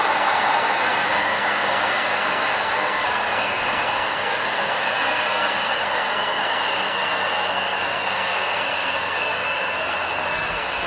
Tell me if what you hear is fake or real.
fake